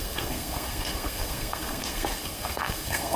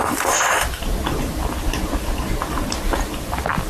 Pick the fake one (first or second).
first